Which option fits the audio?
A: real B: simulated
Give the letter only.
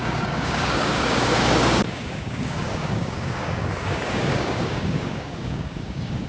B